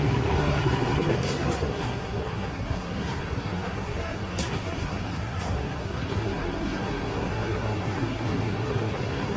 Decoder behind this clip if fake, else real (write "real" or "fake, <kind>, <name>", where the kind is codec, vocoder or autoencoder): fake, codec, SNAC